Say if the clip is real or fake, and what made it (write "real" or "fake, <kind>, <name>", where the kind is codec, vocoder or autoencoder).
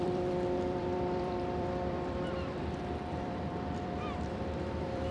fake, vocoder, BigVGAN v2